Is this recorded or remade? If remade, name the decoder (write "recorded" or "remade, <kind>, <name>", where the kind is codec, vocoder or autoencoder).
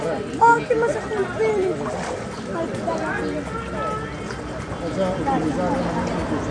recorded